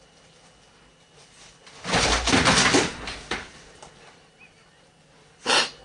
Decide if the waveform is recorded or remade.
recorded